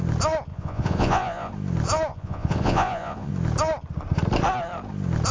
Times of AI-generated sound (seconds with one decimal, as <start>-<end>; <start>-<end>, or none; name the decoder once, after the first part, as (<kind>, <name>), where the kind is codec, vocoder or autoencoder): 0.5-1.5 (vocoder, Vocos); 2.1-3.3